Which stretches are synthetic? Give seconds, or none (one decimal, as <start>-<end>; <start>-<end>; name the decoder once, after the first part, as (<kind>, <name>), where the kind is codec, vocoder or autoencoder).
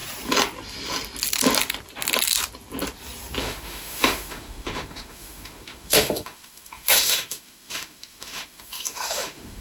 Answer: 3.4-9.6 (autoencoder, DAC-VAE)